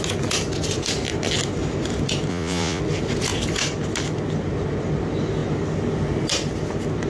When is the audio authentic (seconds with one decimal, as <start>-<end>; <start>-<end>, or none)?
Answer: 0.0-2.3; 2.8-7.1